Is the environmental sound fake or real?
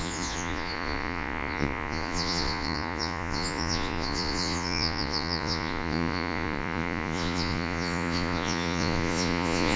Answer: fake